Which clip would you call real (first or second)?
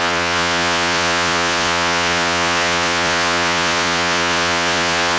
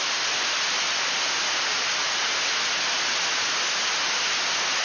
second